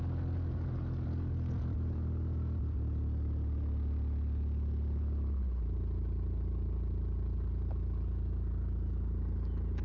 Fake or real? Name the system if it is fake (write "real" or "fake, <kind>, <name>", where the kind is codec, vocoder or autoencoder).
real